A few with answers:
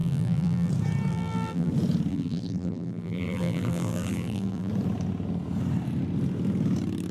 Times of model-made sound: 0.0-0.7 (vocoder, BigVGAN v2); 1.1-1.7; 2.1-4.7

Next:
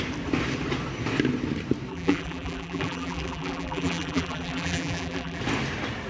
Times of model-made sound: 1.9-5.4 (vocoder, BigVGAN v2)

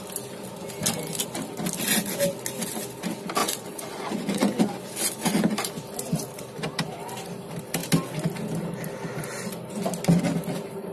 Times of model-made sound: 3.4-4.6 (vocoder, Vocos)

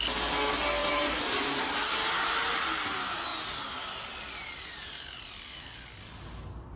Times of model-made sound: 0.8-2.5 (vocoder, BigVGAN v2)

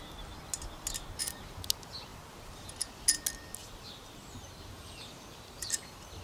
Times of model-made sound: 2.1-2.7 (vocoder, BigVGAN v2); 3.6-6.2

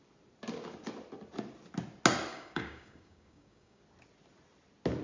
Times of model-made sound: 2.3-3.8 (codec, DAC)

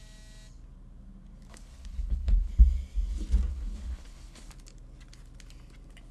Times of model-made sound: 1.5-2.5 (codec, HILCodec); 3.5-4.5